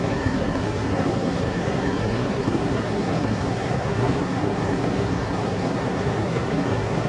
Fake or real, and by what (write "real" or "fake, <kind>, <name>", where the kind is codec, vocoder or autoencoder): fake, codec, SNAC